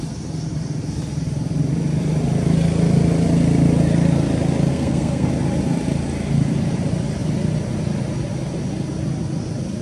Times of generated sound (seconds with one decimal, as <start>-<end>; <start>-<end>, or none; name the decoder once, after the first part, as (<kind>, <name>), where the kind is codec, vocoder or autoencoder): 4.7-5.3 (codec, SNAC)